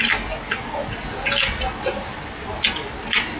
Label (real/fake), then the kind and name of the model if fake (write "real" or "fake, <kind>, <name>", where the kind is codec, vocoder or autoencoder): real